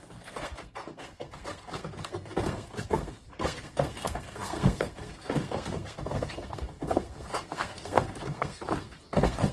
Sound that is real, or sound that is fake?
fake